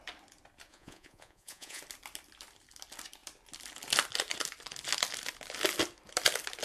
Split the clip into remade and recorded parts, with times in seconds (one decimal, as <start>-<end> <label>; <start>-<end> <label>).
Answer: 0.0-0.7 recorded; 0.7-1.8 remade; 1.8-6.6 recorded